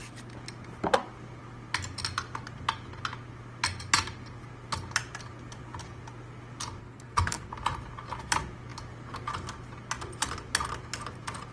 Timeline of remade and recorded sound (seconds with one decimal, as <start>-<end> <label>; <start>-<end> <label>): 0.0-6.8 recorded; 6.8-7.5 remade; 7.5-11.5 recorded

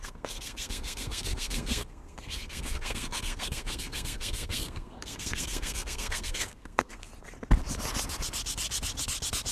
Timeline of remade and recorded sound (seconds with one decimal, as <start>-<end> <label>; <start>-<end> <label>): 0.0-7.1 remade; 7.1-9.5 recorded

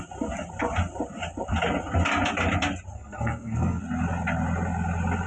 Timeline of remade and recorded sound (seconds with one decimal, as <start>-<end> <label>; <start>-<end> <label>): 0.0-2.9 recorded; 2.9-3.8 remade; 3.8-5.3 recorded

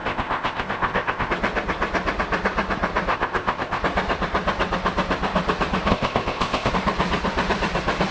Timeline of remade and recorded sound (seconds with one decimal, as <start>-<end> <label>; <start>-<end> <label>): 0.0-1.3 remade; 1.3-3.1 recorded; 3.1-3.8 remade; 3.8-5.9 recorded; 5.9-6.7 remade; 6.7-8.1 recorded

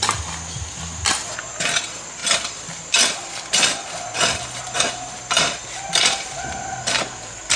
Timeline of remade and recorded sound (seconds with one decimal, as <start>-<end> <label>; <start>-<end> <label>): 0.0-2.2 recorded; 2.2-4.6 remade; 4.6-7.6 recorded

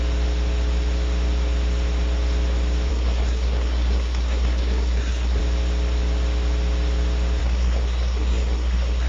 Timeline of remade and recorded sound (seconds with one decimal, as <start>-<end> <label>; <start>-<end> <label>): 0.0-2.9 recorded; 2.9-5.4 remade; 5.4-7.4 recorded; 7.4-9.1 remade

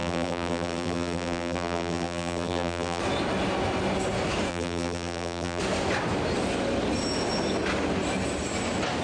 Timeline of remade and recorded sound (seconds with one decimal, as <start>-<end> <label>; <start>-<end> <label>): 0.0-3.0 remade; 3.0-4.5 recorded; 4.5-5.6 remade; 5.6-9.0 recorded

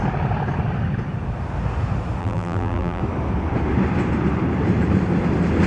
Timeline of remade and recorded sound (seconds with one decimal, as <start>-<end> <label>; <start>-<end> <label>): 0.0-2.2 recorded; 2.2-3.0 remade; 3.0-5.7 recorded